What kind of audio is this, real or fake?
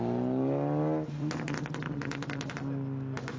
real